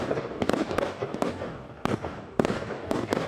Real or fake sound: fake